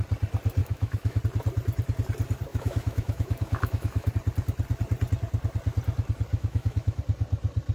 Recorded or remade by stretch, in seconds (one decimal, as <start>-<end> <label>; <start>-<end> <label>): 0.0-0.6 recorded; 0.6-1.2 remade; 1.2-2.5 recorded; 2.5-4.1 remade; 4.1-6.3 recorded; 6.3-7.0 remade; 7.0-7.7 recorded